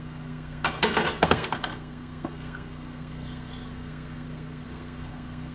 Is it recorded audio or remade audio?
remade